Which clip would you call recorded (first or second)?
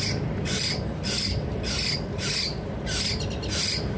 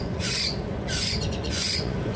first